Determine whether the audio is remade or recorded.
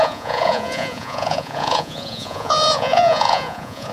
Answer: remade